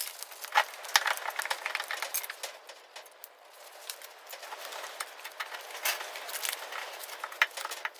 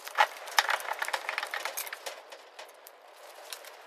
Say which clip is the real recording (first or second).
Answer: first